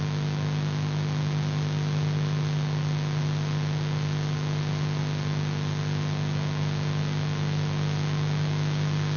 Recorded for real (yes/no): yes